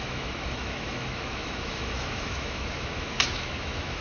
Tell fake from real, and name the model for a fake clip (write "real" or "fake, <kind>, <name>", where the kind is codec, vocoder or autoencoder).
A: fake, autoencoder, DAC-VAE